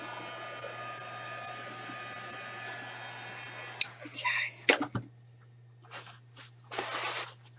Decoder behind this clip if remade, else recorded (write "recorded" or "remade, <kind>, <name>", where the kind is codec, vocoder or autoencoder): recorded